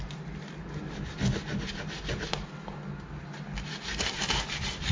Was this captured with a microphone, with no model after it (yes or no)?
yes